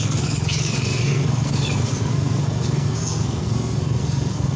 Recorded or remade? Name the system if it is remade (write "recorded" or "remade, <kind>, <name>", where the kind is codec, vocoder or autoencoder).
remade, codec, SNAC